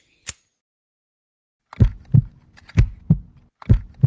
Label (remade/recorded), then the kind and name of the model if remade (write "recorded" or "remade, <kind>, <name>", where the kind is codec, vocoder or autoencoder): recorded